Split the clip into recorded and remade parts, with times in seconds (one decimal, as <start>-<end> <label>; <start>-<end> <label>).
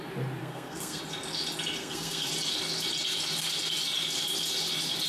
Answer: 0.0-0.4 recorded; 0.4-1.0 remade; 1.0-1.8 recorded; 1.8-2.3 remade; 2.3-5.1 recorded